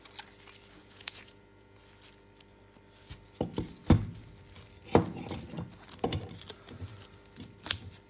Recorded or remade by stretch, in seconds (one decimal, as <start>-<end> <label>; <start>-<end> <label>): 0.0-0.8 recorded; 0.8-1.8 remade; 1.8-8.1 recorded